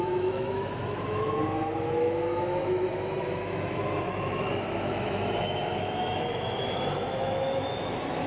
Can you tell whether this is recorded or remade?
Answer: remade